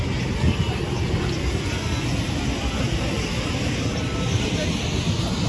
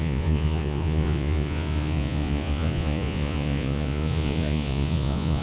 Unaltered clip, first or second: first